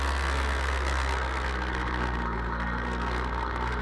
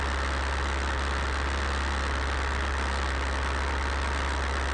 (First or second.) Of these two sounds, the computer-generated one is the first